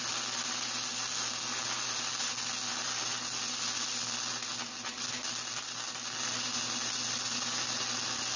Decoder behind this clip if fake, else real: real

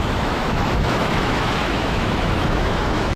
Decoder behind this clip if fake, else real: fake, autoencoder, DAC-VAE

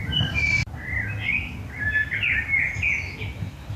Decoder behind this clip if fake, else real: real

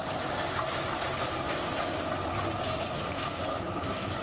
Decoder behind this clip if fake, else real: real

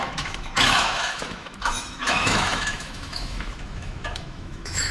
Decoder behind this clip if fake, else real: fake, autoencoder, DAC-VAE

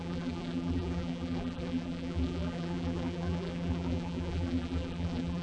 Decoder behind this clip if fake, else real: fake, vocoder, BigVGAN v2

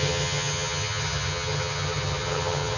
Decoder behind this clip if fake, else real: fake, vocoder, HiFi-GAN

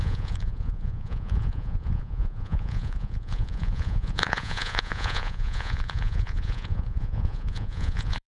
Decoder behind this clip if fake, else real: fake, vocoder, Vocos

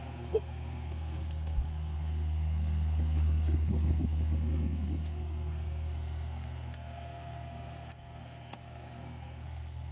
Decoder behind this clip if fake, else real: fake, codec, SNAC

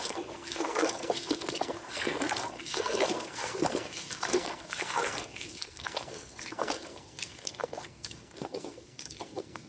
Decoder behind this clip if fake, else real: fake, codec, SNAC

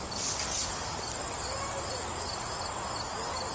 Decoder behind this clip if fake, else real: real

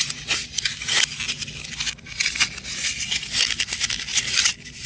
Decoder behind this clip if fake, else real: real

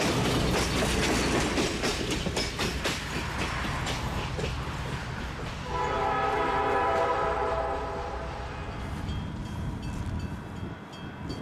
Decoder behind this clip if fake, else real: real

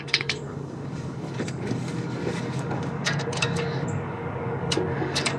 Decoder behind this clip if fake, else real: fake, codec, DAC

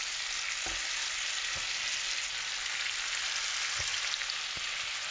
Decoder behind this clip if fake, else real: real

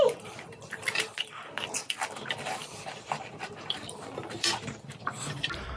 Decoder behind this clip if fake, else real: fake, vocoder, BigVGAN v2